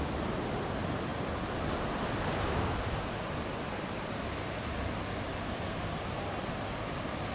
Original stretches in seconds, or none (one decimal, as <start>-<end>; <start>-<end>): 0.0-5.3; 6.4-7.3